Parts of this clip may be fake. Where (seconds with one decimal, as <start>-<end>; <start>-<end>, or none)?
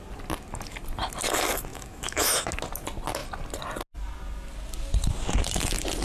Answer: 1.7-2.5